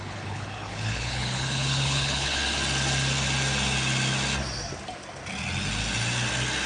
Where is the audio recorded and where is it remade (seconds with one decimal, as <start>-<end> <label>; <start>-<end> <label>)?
0.0-2.4 remade; 2.4-6.7 recorded